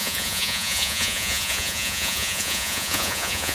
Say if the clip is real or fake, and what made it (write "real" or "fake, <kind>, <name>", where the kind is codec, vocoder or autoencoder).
fake, vocoder, Vocos